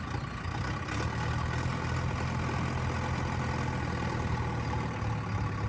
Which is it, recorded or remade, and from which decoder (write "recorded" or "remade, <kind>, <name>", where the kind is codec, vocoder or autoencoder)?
recorded